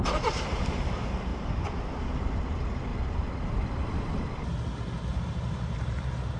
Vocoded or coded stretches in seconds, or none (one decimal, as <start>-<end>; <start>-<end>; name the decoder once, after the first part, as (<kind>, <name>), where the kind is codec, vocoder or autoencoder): 0.0-2.9 (vocoder, BigVGAN v2); 5.1-6.4